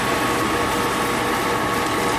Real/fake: real